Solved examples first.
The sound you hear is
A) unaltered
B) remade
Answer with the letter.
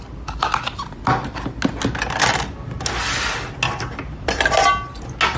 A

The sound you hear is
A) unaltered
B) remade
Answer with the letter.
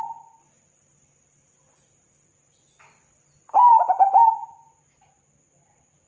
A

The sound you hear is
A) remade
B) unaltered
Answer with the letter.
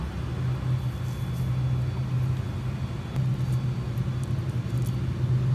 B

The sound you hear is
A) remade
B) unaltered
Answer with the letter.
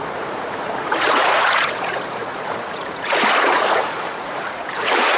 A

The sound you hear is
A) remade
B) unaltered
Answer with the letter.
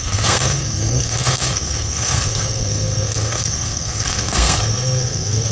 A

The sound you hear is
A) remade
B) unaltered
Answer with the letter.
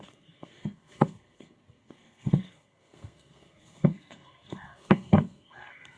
A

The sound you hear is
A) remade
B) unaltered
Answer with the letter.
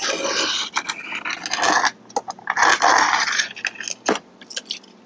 B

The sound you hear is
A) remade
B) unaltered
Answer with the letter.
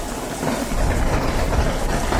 B